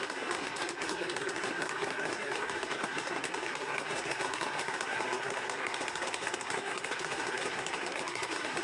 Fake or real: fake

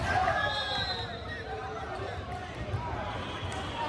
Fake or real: real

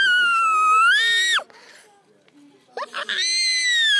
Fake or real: real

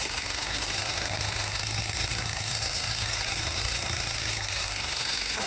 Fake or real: fake